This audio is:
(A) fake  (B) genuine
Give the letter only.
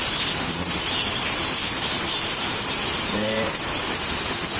A